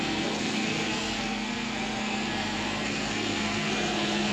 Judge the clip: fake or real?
fake